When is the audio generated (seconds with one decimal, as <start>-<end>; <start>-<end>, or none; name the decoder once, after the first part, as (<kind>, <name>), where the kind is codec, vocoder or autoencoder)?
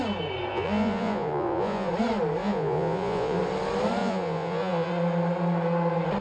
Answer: 0.5-1.9 (vocoder, Vocos); 2.4-3.4; 4.0-4.9